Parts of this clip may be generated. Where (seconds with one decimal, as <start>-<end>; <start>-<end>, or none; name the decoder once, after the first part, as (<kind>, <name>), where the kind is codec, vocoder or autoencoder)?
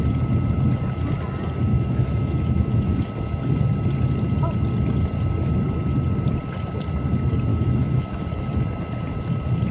1.7-3.1 (autoencoder, DAC-VAE); 7.5-8.3